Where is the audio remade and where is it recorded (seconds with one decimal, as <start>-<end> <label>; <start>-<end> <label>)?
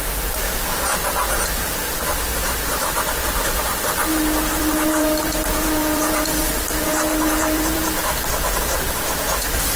0.0-9.8 remade